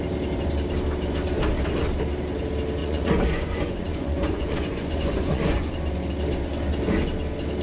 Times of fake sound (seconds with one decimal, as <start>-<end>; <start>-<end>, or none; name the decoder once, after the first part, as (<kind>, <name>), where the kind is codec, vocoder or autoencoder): 2.8-5.7 (vocoder, Vocos)